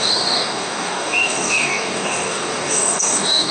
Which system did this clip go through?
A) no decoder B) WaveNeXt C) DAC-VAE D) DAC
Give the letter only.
D